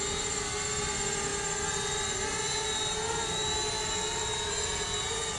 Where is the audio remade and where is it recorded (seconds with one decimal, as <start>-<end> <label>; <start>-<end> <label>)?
0.0-5.4 recorded